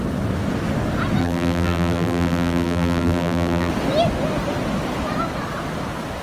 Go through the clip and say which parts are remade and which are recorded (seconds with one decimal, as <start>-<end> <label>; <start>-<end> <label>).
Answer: 0.0-1.2 recorded; 1.2-3.7 remade; 3.7-6.2 recorded